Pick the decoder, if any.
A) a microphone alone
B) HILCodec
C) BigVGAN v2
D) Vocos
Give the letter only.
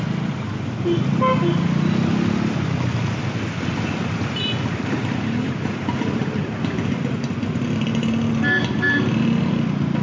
A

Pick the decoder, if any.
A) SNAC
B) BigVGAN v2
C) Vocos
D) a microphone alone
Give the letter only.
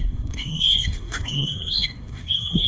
A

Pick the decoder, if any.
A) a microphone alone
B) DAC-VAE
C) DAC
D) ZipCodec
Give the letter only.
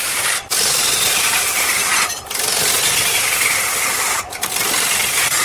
A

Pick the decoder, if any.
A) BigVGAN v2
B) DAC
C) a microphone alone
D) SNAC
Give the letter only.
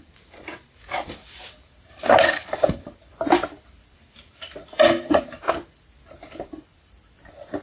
A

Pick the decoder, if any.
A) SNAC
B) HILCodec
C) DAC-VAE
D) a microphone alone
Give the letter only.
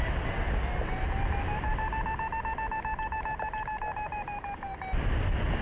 D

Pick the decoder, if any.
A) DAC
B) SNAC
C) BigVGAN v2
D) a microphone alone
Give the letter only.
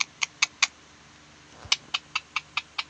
D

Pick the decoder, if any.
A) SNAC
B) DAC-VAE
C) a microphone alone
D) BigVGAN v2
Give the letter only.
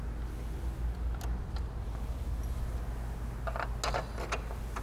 C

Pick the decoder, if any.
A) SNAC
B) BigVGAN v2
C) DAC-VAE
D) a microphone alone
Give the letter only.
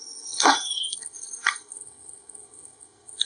A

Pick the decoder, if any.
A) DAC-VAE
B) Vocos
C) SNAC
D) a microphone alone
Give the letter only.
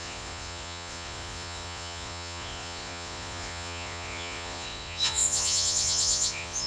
B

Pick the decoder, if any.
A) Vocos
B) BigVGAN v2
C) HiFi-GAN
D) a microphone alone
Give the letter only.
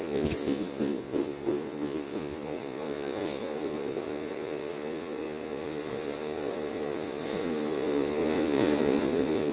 A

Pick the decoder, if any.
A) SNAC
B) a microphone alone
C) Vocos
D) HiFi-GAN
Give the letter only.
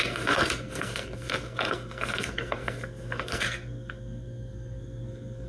A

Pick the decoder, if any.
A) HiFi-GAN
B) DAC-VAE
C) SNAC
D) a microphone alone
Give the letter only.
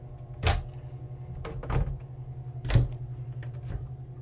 D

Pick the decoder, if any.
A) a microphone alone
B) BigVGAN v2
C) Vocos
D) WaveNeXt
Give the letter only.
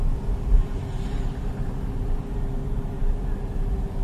B